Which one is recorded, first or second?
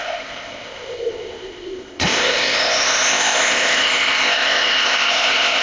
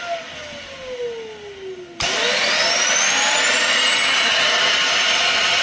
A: second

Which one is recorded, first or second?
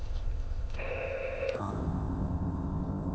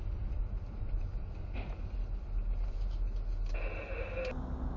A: second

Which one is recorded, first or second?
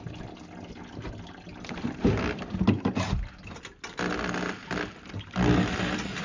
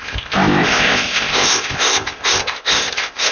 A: first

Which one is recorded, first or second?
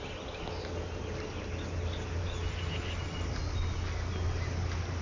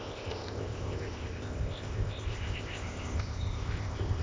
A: first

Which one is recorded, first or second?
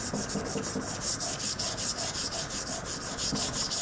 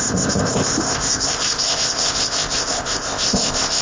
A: first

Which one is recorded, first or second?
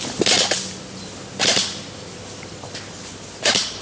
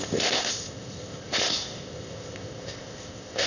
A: first